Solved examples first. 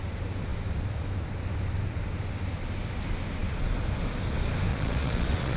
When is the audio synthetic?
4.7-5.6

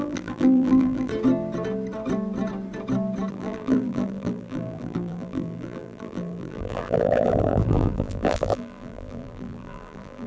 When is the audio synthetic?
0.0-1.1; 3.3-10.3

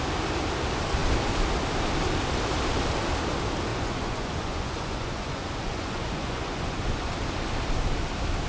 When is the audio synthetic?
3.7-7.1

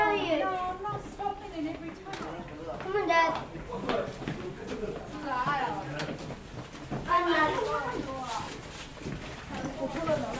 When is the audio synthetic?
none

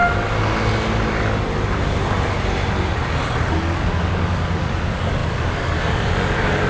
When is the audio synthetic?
3.5-6.7

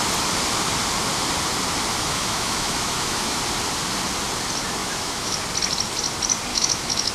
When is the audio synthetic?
1.9-3.4; 4.8-5.4; 6.5-7.1

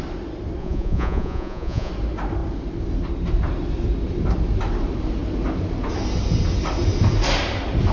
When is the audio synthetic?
0.6-1.9